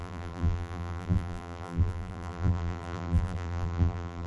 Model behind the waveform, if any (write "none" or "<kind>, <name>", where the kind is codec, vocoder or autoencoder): vocoder, BigVGAN v2